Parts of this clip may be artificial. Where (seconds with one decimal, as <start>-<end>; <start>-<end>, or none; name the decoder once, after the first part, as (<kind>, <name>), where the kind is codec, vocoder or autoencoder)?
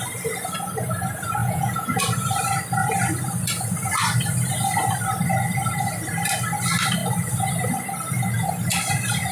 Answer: 1.4-2.0 (vocoder, Vocos)